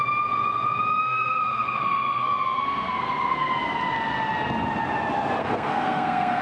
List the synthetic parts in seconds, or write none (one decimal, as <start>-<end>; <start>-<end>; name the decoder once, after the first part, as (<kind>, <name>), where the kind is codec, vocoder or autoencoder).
1.0-3.5 (codec, SNAC); 5.4-6.4